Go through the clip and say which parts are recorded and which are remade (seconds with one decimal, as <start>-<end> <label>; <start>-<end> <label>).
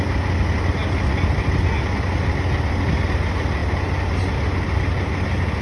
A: 0.0-5.6 recorded